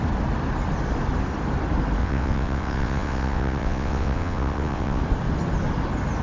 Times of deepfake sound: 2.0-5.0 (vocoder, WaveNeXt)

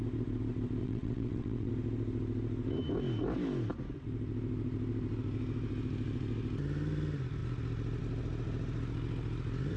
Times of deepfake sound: 0.8-1.7 (vocoder, WaveNeXt)

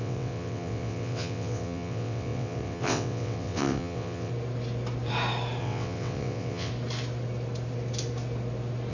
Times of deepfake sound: 0.0-4.3 (vocoder, WaveNeXt); 5.6-6.7

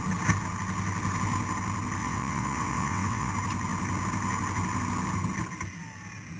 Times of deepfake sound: 2.0-3.3 (vocoder, WaveNeXt)

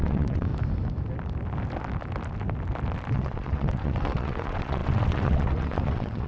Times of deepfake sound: 0.0-0.5 (vocoder, WaveNeXt); 3.1-6.3

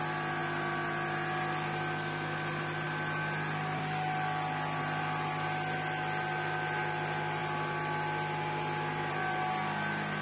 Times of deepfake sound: none